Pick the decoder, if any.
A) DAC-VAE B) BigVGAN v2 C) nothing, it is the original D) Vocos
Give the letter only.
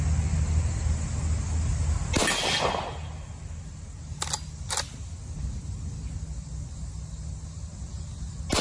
C